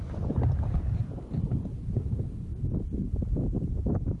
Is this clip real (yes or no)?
yes